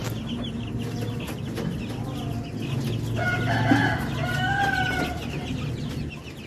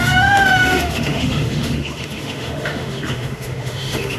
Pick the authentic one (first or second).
first